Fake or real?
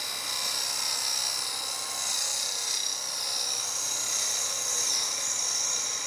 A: real